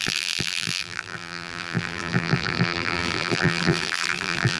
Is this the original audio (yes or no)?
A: no